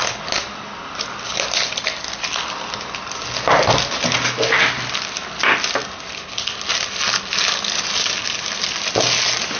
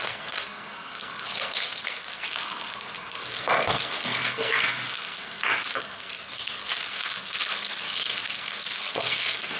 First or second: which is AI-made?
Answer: second